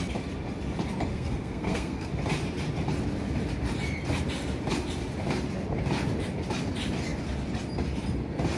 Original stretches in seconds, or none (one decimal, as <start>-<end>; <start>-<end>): 0.0-1.1; 2.1-8.6